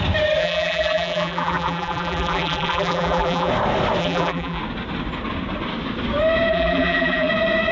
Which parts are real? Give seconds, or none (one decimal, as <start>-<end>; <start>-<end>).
0.0-0.4; 3.5-4.0; 4.6-6.5; 7.3-7.7